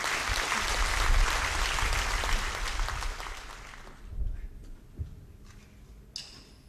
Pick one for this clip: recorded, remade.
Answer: recorded